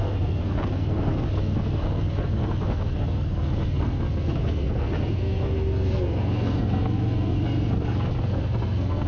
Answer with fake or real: fake